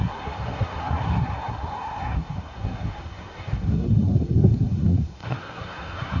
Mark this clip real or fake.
fake